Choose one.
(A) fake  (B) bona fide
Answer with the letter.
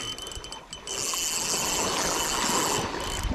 B